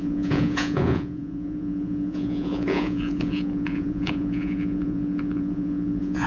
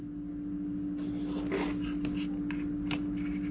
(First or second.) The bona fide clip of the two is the second